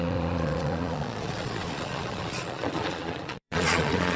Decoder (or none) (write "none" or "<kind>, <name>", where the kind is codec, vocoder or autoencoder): vocoder, Vocos